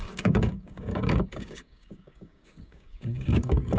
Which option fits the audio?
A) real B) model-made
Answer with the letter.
B